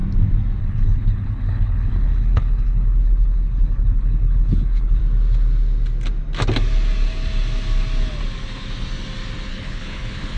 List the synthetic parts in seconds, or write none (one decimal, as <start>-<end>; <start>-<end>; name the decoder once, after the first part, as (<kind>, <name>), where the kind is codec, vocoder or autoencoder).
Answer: 0.6-5.0 (codec, HILCodec); 9.5-10.4